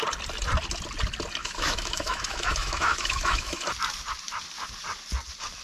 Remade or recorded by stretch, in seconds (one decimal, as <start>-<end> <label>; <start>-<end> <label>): 0.0-1.4 recorded; 1.4-3.6 remade; 3.6-5.6 recorded

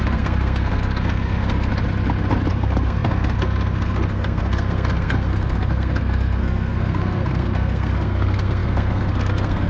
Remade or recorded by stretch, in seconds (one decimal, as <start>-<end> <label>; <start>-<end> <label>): 0.0-1.7 remade; 1.7-2.5 recorded; 2.5-9.7 remade

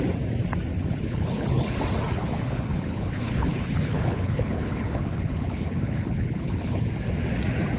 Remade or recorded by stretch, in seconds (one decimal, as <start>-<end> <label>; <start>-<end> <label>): 0.0-0.7 recorded; 0.7-1.8 remade; 1.8-2.2 recorded; 2.2-6.9 remade; 6.9-7.8 recorded

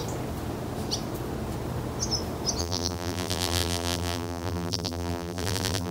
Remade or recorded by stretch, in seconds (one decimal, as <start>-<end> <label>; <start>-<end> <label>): 0.0-2.6 recorded; 2.6-5.9 remade

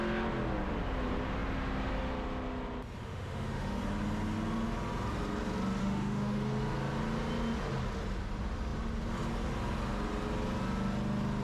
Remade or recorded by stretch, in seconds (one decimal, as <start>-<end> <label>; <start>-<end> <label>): 0.0-3.0 recorded; 3.0-3.8 remade; 3.8-5.8 recorded; 5.8-6.4 remade; 6.4-11.4 recorded